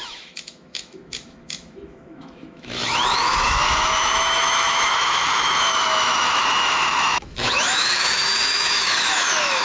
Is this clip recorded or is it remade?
remade